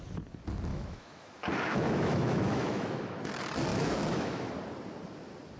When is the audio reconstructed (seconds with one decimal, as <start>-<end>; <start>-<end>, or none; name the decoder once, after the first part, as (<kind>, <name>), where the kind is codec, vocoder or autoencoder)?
0.7-3.3 (autoencoder, DAC-VAE); 3.7-4.5